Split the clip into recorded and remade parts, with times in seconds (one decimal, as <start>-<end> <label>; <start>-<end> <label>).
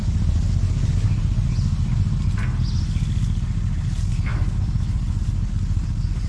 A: 0.0-6.3 recorded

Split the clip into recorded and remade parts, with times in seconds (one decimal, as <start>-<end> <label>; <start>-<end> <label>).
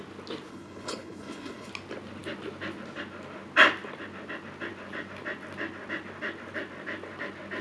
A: 0.0-0.5 recorded; 0.5-1.7 remade; 1.7-7.6 recorded